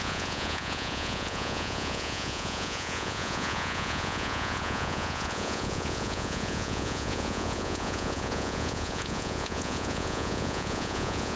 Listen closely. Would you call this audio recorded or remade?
remade